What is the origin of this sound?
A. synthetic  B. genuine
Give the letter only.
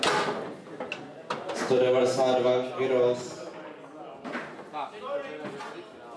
B